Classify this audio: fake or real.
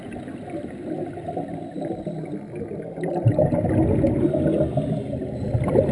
real